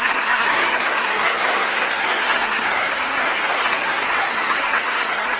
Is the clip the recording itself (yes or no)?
no